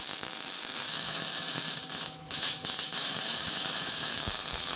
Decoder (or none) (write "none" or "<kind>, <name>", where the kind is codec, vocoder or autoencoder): autoencoder, DAC-VAE